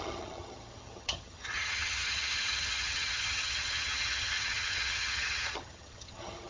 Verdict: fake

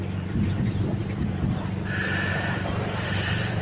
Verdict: fake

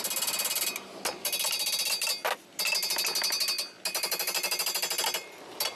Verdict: real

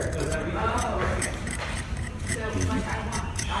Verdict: fake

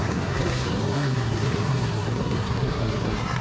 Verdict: fake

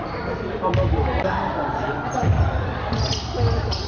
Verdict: real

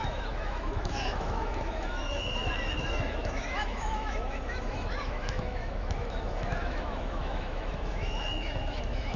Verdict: fake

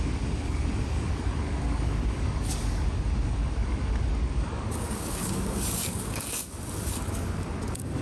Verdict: fake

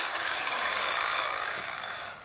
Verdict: fake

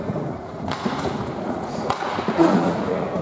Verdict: fake